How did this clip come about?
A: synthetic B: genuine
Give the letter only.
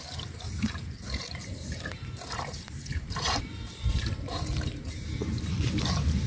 A